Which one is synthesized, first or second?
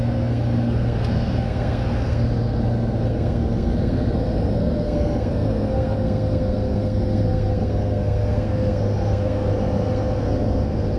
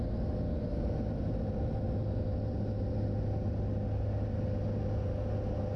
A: first